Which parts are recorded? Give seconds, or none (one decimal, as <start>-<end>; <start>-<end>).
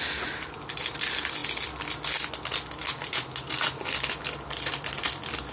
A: 0.0-5.5